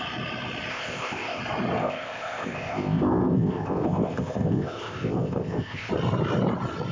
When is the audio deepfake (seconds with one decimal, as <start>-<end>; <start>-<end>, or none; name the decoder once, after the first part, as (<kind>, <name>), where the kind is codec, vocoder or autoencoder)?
0.7-1.4 (codec, ZipCodec); 1.8-5.9